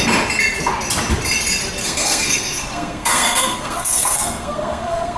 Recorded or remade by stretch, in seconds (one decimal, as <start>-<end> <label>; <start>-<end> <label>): 0.0-1.8 recorded; 1.8-5.2 remade